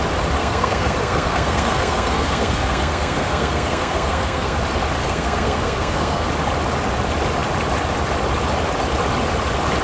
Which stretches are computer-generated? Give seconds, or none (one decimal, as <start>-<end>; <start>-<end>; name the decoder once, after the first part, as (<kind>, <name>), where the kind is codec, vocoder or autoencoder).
0.4-4.6 (codec, SNAC); 5.0-6.3